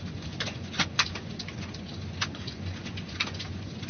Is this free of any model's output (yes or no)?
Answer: no